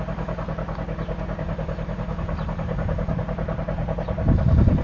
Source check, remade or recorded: recorded